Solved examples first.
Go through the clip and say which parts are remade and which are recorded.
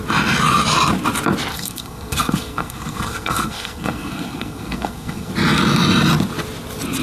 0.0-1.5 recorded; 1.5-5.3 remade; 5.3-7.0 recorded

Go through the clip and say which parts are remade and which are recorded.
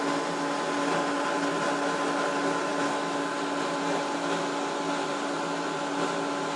0.0-6.6 recorded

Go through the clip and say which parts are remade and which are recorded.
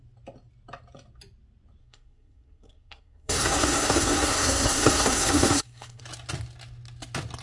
0.0-1.8 recorded; 1.8-6.0 remade; 6.0-7.4 recorded